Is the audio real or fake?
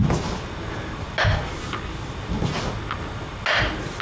real